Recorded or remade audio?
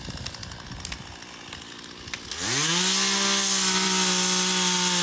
recorded